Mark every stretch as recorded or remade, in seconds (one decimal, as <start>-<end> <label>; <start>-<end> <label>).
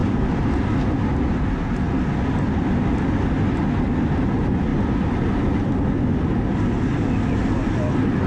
0.0-8.3 recorded